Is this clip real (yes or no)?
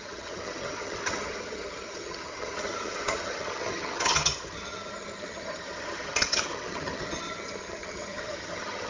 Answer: no